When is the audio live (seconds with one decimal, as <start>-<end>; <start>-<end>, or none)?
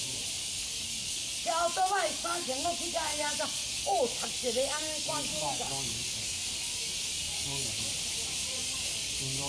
0.0-0.4; 2.7-3.1; 4.0-4.4; 7.7-8.5; 9.1-9.5